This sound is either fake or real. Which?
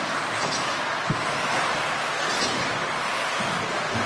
real